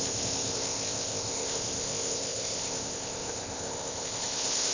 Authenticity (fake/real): fake